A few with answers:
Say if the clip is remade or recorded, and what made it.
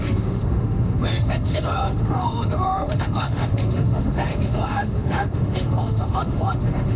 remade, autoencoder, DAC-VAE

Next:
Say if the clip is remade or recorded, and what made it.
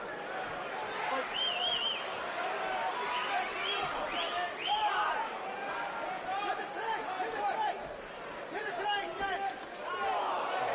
recorded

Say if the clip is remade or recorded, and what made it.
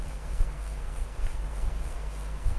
remade, codec, SNAC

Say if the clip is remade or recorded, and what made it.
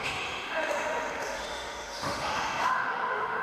remade, autoencoder, DAC-VAE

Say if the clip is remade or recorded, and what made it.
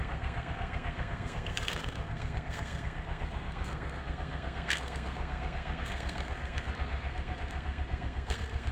remade, codec, SNAC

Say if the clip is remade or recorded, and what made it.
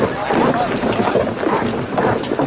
recorded